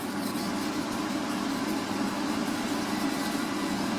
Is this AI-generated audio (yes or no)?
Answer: no